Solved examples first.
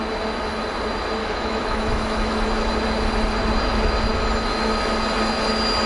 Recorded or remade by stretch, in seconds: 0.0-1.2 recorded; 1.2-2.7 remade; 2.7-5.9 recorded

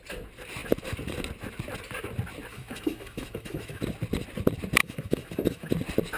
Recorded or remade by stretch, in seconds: 0.0-2.5 recorded; 2.5-3.8 remade; 3.8-4.8 recorded; 4.8-5.7 remade; 5.7-6.2 recorded

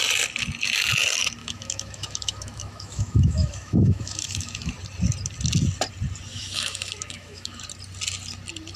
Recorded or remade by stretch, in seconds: 0.0-1.4 recorded; 1.4-4.7 remade; 4.7-6.3 recorded; 6.3-7.6 remade; 7.6-8.8 recorded

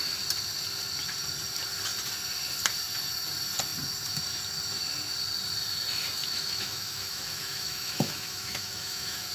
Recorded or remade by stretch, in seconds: 0.0-6.2 recorded; 6.2-9.3 remade

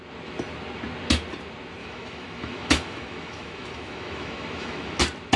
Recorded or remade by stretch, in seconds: 0.0-1.8 recorded; 1.8-5.0 remade; 5.0-5.4 recorded

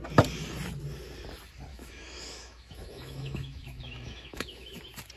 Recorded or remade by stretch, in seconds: 0.0-1.7 recorded; 1.7-4.8 remade; 4.8-5.2 recorded

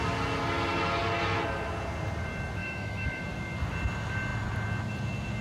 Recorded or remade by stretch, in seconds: 0.0-2.6 recorded; 2.6-3.2 remade; 3.2-5.4 recorded

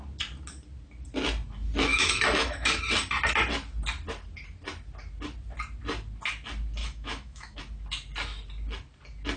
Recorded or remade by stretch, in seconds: 0.0-1.9 recorded; 1.9-2.8 remade; 2.8-6.8 recorded; 6.8-7.6 remade; 7.6-9.4 recorded